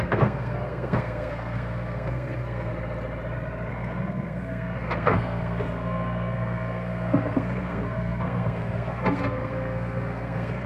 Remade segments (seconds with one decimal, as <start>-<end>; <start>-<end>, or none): 0.0-2.7; 3.7-10.7